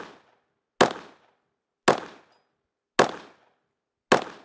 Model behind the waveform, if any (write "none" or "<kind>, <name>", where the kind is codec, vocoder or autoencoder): none